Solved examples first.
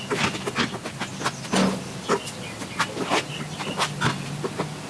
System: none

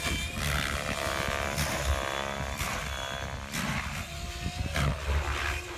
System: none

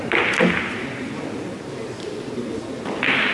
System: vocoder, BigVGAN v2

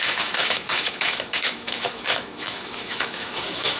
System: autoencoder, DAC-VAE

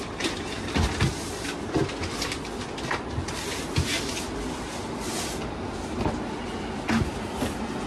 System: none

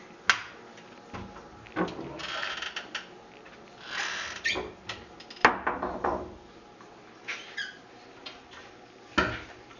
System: none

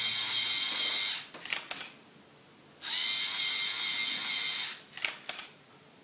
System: none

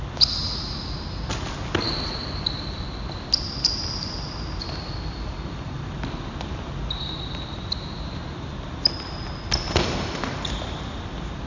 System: none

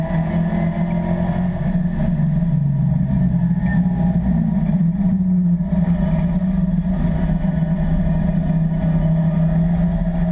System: none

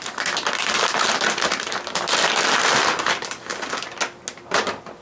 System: none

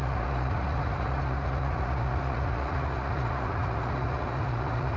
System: vocoder, Vocos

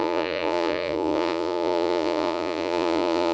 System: vocoder, Vocos